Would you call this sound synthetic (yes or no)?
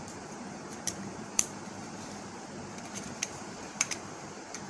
yes